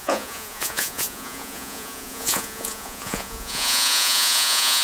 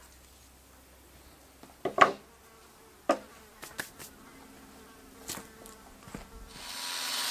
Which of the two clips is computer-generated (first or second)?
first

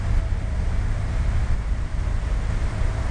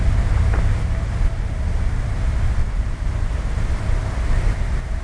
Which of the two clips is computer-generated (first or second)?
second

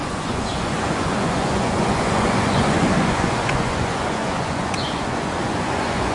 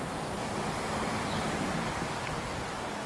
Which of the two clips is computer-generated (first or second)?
first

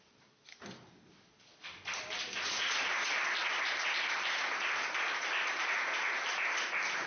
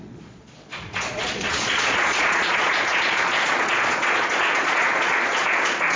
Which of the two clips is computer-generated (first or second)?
second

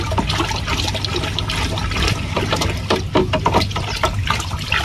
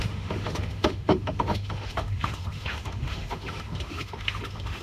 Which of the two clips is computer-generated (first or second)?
second